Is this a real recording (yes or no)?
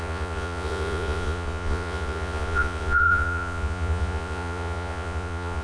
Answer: no